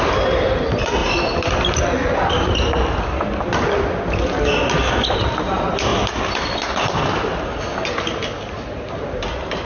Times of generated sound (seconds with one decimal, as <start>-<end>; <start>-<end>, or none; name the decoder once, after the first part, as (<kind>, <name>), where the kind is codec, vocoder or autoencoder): none